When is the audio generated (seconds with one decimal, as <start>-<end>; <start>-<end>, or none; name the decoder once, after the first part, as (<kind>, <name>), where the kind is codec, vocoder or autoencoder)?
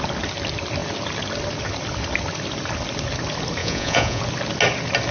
3.6-4.2 (vocoder, Vocos)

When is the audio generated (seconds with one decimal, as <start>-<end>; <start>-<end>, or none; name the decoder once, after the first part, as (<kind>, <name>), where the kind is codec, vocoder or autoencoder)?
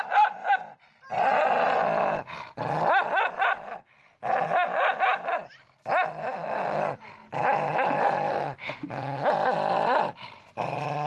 6.2-6.8 (autoencoder, DAC-VAE); 8.3-9.3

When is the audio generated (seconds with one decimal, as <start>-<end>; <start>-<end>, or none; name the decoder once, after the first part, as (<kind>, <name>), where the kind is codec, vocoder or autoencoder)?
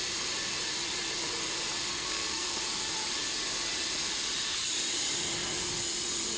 1.9-2.6 (codec, SNAC)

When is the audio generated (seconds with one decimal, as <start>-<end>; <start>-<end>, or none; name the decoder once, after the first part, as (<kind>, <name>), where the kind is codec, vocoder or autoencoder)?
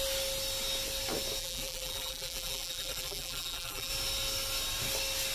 1.4-3.9 (vocoder, BigVGAN v2)